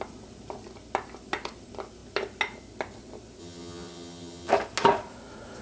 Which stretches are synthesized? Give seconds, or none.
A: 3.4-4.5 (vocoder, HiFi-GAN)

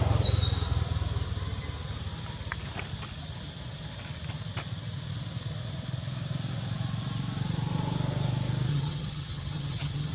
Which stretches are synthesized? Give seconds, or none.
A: 8.7-10.1 (vocoder, HiFi-GAN)

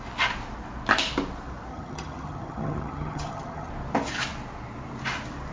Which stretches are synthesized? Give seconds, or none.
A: 1.7-3.7 (vocoder, HiFi-GAN)